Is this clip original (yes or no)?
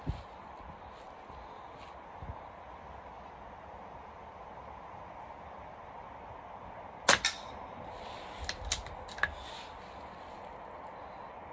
yes